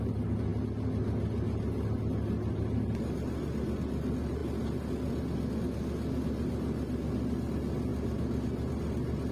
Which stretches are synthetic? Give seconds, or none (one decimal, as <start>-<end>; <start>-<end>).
none

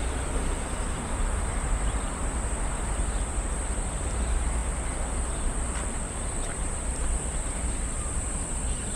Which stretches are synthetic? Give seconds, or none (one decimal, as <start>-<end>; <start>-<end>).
0.0-4.6; 6.1-8.9

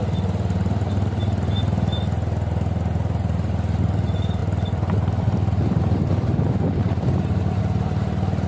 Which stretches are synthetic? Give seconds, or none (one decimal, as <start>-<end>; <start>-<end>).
4.4-7.6

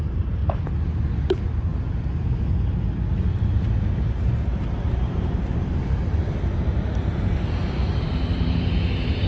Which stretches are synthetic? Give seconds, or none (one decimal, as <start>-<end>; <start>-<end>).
0.0-0.4; 1.1-1.7; 3.3-9.3

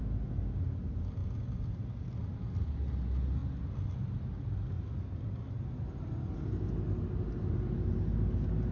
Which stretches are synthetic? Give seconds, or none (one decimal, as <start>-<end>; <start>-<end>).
none

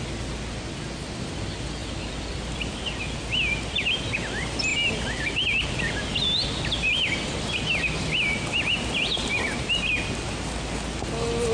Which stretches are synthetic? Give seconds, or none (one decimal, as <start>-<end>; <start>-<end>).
1.8-4.3; 4.7-9.7

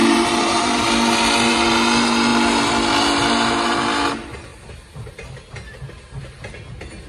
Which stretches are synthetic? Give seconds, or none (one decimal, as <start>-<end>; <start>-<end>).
0.0-0.9

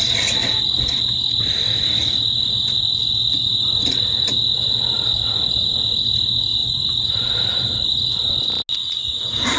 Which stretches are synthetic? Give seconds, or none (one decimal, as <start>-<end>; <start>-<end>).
6.6-8.3; 8.8-9.6